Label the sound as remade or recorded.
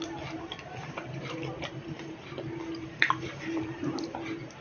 remade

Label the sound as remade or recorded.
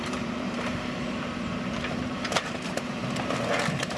remade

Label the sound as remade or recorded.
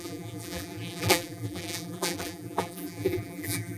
remade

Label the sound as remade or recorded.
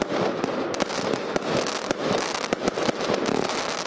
recorded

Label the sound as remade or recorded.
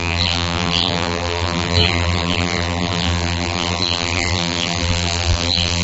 remade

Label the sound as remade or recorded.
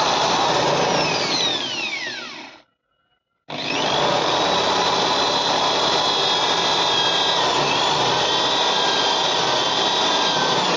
recorded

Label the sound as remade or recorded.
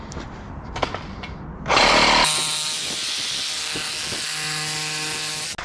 recorded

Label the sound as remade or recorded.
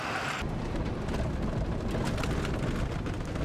recorded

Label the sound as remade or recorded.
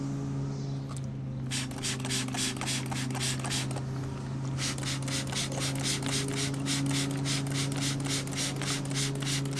recorded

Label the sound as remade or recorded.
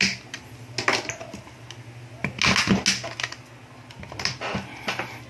recorded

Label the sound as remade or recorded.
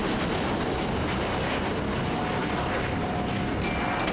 recorded